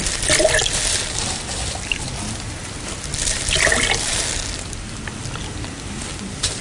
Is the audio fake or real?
real